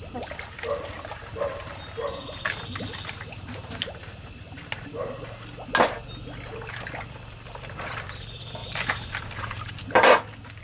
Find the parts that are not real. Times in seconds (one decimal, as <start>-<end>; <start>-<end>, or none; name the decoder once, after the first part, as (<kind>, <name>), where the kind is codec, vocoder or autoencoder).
8.6-9.8 (vocoder, BigVGAN v2)